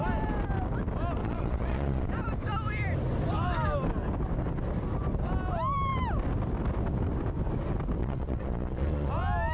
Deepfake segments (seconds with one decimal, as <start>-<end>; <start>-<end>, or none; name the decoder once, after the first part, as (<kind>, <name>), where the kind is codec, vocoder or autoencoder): 1.2-2.1 (vocoder, Vocos); 8.0-9.1